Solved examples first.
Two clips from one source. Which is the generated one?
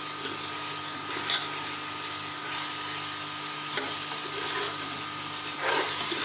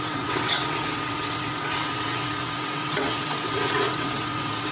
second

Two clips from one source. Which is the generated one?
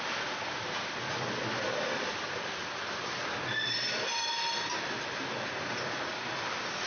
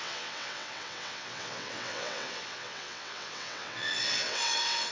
second